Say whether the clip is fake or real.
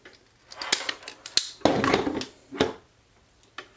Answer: real